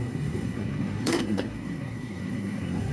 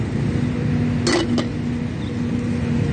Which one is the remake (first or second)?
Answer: first